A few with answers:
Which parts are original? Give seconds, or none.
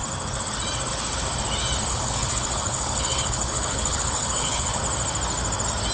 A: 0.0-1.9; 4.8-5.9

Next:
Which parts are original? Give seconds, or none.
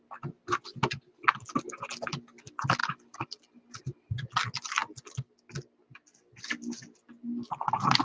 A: 0.0-8.0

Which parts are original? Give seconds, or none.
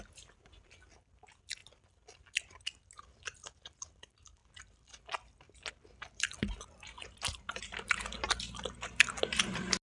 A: 0.0-9.9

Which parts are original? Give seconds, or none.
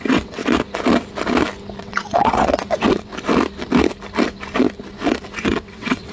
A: 0.4-1.8; 3.1-5.4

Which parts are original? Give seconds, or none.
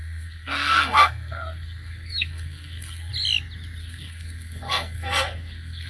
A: 3.1-3.8